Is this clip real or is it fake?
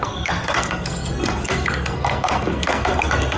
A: fake